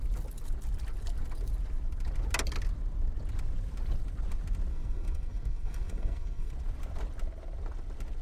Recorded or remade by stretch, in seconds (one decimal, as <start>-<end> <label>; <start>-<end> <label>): 0.0-4.7 recorded; 4.7-6.5 remade; 6.5-8.2 recorded